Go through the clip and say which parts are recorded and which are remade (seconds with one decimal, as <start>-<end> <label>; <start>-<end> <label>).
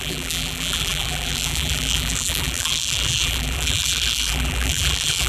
0.0-5.3 remade